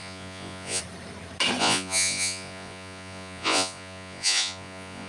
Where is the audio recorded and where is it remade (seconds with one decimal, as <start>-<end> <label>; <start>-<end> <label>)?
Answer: 0.0-0.8 remade; 0.8-1.6 recorded; 1.6-5.1 remade